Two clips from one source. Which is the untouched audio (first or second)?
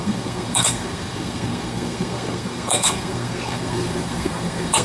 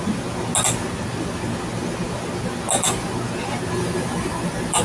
second